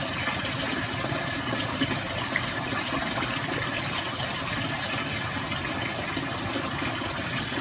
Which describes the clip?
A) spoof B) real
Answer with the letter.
B